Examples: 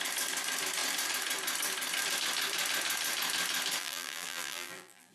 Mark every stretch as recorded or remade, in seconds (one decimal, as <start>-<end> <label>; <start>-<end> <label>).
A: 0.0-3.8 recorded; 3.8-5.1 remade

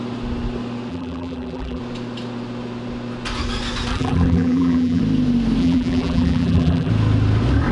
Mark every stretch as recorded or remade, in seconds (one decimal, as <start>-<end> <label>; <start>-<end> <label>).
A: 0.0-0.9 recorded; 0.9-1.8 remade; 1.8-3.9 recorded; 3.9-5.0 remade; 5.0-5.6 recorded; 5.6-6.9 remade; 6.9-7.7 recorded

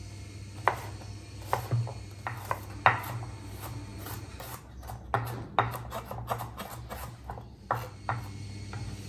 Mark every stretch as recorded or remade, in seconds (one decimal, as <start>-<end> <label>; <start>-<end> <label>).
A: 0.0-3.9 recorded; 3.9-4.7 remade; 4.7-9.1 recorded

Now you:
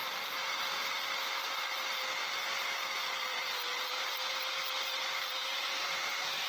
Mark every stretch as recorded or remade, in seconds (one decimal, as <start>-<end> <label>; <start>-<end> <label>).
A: 0.0-0.6 remade; 0.6-3.3 recorded; 3.3-4.4 remade; 4.4-5.4 recorded; 5.4-6.5 remade